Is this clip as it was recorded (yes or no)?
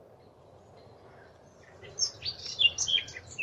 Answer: yes